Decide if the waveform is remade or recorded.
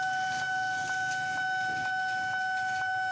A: recorded